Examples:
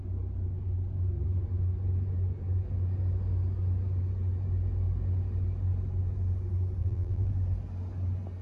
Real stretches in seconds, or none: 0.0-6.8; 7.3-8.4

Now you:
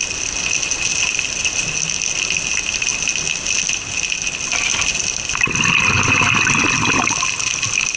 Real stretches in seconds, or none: 0.0-8.0

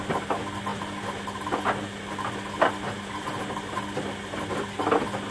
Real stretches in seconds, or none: 0.0-5.3

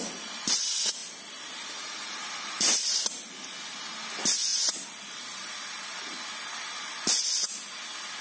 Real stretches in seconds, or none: 0.0-1.0; 3.3-4.5; 5.5-8.2

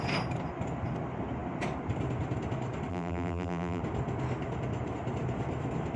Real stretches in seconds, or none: 0.0-2.9; 3.8-6.0

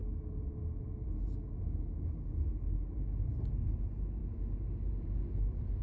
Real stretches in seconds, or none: 0.0-5.8

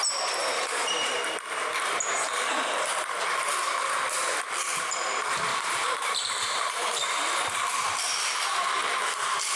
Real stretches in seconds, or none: 0.0-0.4; 1.1-5.5; 7.5-9.6